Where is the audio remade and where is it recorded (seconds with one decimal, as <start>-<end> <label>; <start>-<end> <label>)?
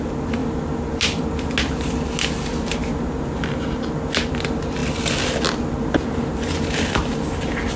0.0-7.8 recorded